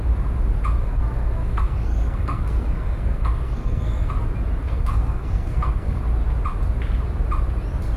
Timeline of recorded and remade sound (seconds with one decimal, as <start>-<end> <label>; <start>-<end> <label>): 0.0-0.8 recorded; 0.8-4.1 remade; 4.1-4.6 recorded; 4.6-6.0 remade; 6.0-8.0 recorded